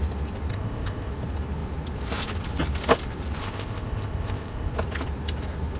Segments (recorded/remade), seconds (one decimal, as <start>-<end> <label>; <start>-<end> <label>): 0.0-0.5 recorded; 0.5-1.1 remade; 1.1-3.4 recorded; 3.4-4.7 remade; 4.7-5.8 recorded